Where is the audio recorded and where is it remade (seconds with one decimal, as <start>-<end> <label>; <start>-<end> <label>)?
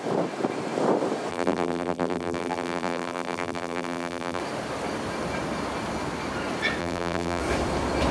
0.0-1.3 recorded; 1.3-4.4 remade; 4.4-6.8 recorded; 6.8-7.4 remade; 7.4-8.1 recorded